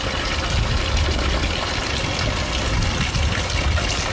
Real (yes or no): yes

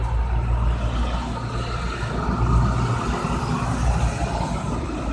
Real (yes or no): yes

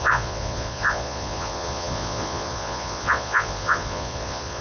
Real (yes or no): no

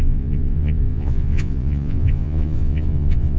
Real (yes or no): no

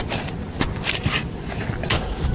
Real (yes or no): yes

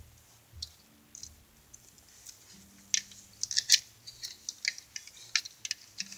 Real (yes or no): yes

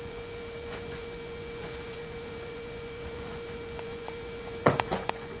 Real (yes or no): no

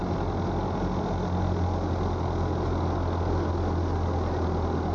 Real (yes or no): yes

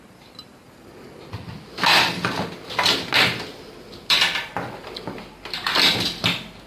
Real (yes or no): yes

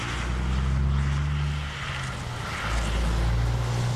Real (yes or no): yes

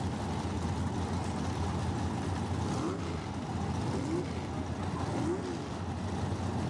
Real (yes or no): yes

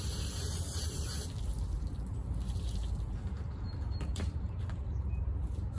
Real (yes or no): no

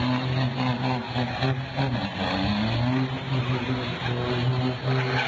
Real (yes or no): yes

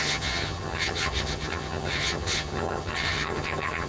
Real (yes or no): no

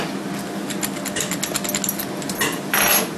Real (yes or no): yes